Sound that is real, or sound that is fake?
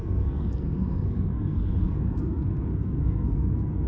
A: fake